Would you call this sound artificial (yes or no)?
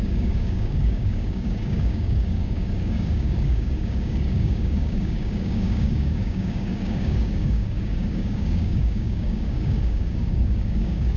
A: yes